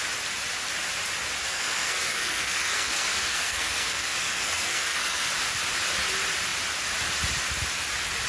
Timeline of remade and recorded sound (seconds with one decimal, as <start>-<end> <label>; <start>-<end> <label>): 0.0-1.4 recorded; 1.4-5.3 remade; 5.3-8.3 recorded